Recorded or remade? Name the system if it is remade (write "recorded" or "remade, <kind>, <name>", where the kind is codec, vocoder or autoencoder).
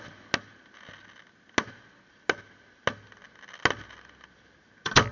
recorded